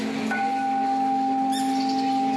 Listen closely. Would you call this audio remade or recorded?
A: recorded